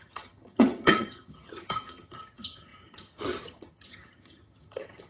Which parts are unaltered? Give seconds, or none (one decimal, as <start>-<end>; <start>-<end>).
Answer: none